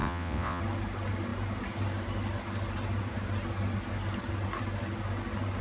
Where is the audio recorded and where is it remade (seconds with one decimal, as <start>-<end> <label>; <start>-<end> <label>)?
0.0-0.6 remade; 0.6-5.6 recorded